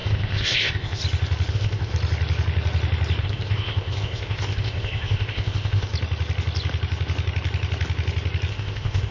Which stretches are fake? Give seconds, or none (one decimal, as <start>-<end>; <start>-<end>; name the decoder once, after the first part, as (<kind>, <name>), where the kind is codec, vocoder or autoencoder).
0.0-1.0 (codec, ZipCodec); 1.5-1.9; 3.2-5.9; 8.5-9.1